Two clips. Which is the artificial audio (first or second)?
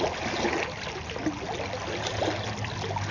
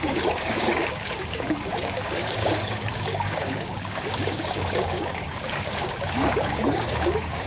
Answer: second